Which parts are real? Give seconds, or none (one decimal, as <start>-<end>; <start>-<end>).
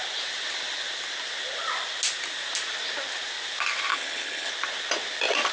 0.0-3.9; 4.5-5.5